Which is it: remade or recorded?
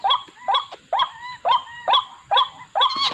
recorded